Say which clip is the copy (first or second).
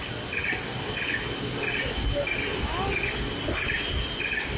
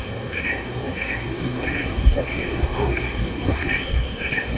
second